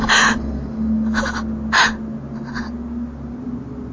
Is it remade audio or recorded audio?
recorded